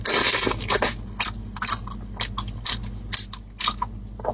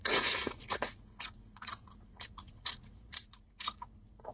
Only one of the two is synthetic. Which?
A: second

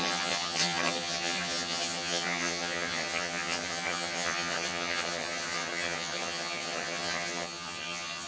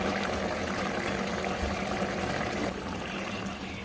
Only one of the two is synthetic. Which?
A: first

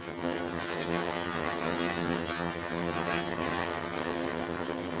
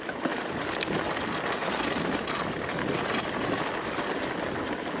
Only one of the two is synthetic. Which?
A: first